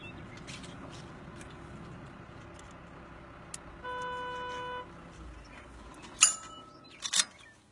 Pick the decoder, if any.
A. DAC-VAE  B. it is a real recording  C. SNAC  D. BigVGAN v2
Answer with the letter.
B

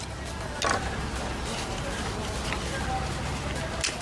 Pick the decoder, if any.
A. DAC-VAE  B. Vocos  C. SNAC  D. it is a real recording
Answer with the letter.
D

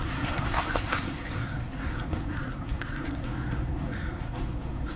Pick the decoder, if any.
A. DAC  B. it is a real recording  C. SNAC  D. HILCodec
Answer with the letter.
C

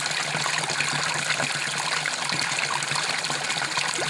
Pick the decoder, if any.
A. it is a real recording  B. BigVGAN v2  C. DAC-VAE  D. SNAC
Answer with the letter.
A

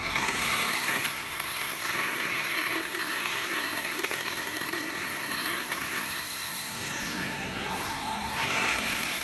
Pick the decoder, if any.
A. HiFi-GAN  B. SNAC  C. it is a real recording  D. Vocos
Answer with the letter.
B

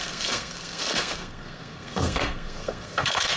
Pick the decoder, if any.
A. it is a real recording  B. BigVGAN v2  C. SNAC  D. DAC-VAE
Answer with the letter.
C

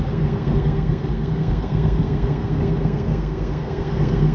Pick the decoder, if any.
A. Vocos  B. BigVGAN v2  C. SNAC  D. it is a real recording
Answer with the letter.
C